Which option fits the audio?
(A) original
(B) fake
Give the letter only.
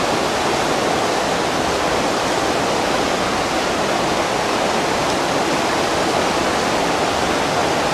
A